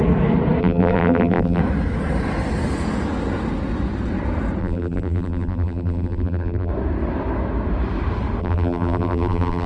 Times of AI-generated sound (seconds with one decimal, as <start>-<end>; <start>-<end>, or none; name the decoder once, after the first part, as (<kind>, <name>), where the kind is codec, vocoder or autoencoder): 0.6-1.6 (vocoder, BigVGAN v2); 4.6-6.7; 8.4-9.7